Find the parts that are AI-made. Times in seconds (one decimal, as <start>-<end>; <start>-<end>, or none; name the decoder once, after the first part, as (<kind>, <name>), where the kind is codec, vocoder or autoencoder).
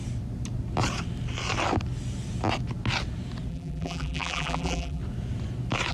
3.5-5.0 (vocoder, BigVGAN v2)